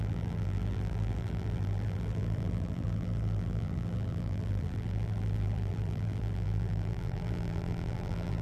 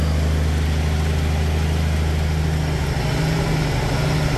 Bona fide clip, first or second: second